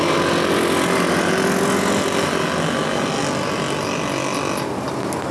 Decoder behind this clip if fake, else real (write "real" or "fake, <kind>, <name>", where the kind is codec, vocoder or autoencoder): real